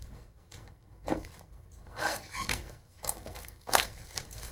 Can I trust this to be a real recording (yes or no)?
no